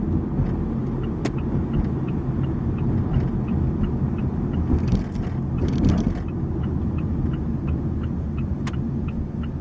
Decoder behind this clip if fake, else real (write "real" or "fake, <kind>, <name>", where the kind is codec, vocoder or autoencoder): real